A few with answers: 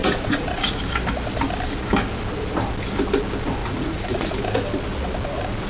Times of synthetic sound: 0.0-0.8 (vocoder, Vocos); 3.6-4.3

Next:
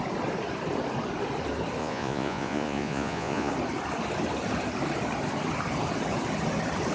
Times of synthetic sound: 1.8-3.5 (vocoder, Vocos)